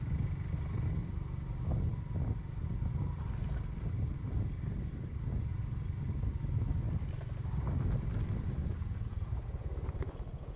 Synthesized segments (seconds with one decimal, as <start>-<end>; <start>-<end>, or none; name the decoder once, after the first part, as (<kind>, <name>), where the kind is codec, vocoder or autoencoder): 8.6-10.6 (vocoder, Vocos)